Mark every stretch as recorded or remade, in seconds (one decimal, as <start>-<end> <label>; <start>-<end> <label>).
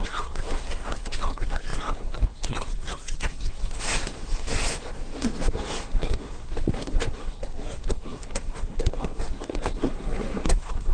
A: 0.0-10.9 remade